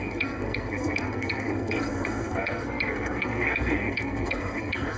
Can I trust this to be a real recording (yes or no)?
no